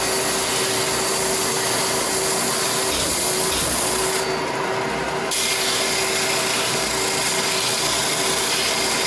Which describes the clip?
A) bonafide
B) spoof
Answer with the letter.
A